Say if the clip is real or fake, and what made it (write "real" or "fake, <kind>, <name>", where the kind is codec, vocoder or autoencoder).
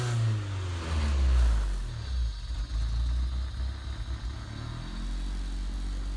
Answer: real